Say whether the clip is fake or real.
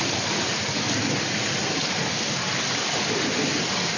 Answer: real